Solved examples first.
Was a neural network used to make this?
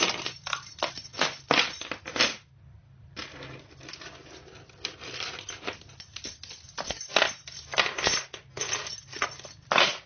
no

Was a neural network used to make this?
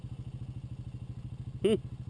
no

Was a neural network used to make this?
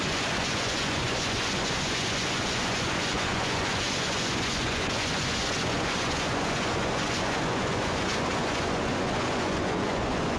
yes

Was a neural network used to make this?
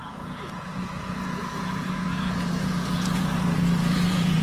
yes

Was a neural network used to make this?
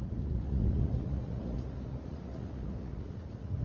yes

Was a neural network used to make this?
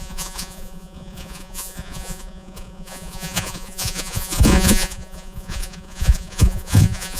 yes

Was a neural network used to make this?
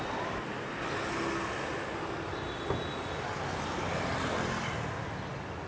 no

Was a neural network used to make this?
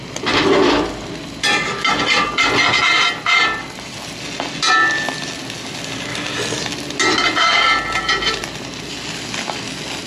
no